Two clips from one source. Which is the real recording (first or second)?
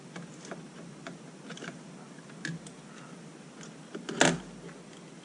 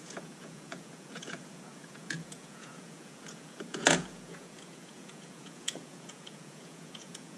first